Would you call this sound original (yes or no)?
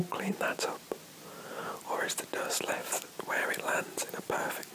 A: yes